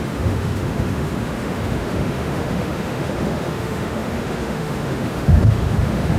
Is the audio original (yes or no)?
no